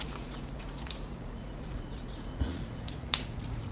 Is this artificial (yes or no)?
yes